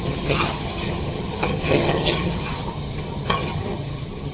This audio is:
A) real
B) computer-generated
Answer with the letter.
B